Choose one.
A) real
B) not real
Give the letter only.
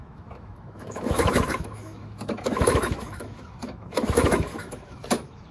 B